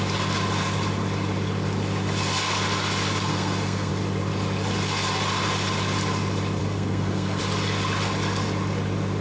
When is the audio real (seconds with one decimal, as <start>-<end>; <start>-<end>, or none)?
0.0-3.3; 3.9-6.6; 7.4-9.2